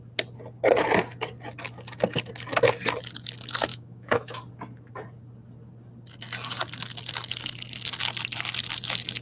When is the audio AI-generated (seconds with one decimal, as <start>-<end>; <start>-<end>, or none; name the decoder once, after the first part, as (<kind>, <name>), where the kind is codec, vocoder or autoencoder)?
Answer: 3.7-4.4 (autoencoder, DAC-VAE)